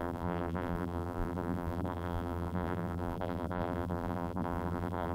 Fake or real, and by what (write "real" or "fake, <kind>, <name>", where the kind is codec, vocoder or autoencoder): fake, vocoder, BigVGAN v2